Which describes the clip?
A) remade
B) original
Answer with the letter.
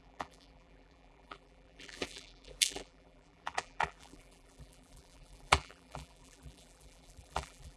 A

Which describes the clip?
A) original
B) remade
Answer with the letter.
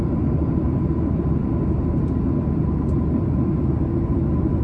B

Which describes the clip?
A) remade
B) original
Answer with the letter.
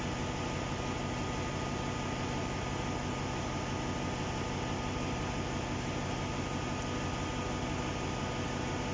B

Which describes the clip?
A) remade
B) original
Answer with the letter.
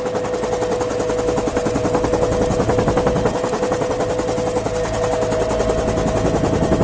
B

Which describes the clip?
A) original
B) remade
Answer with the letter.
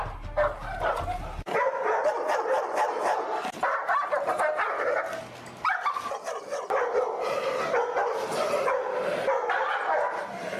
A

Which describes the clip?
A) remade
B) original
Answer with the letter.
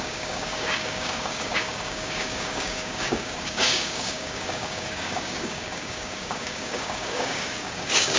A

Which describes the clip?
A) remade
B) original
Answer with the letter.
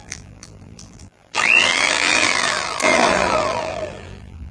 A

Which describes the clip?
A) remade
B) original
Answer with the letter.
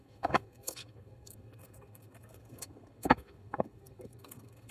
A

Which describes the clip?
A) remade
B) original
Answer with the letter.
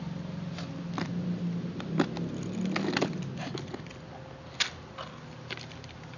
B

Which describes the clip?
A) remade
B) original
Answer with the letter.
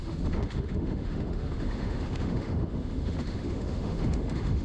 A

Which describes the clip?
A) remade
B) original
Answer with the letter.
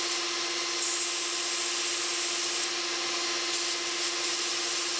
B